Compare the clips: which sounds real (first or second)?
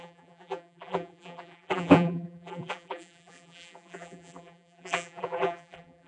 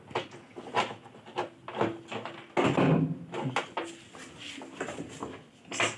second